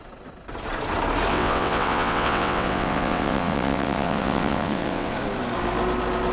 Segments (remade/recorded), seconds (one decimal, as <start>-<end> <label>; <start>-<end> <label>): 0.0-1.3 recorded; 1.3-5.1 remade; 5.1-6.3 recorded